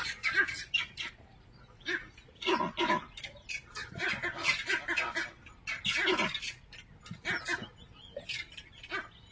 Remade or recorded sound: recorded